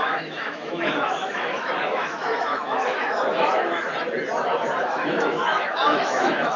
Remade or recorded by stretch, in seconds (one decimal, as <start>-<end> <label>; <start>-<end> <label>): 0.0-3.9 remade; 3.9-4.8 recorded; 4.8-6.6 remade